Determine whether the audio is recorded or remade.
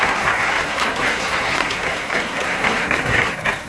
remade